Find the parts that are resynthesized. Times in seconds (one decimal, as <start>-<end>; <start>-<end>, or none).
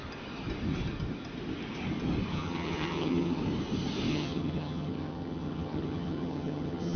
2.3-3.4; 4.1-7.0